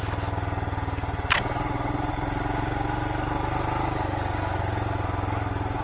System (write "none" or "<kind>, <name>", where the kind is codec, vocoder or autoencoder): none